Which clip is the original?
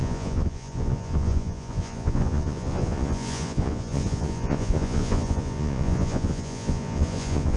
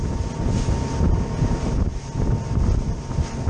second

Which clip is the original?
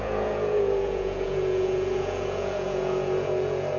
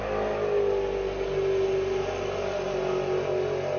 second